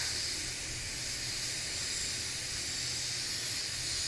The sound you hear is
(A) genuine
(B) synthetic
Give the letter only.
A